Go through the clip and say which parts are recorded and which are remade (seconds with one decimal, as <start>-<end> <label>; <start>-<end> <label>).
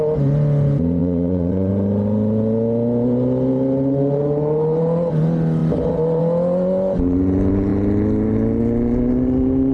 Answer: 0.0-1.0 recorded; 1.0-1.7 remade; 1.7-9.7 recorded